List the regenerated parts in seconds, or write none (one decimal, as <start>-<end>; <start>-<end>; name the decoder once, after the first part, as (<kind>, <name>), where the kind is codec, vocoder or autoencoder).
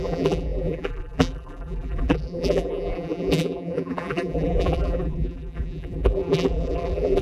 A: 0.0-7.2 (vocoder, BigVGAN v2)